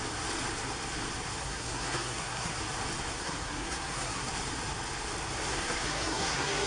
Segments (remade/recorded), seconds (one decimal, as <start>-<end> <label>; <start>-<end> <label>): 0.0-1.4 recorded; 1.4-2.6 remade; 2.6-3.1 recorded; 3.1-4.3 remade; 4.3-5.5 recorded; 5.5-6.7 remade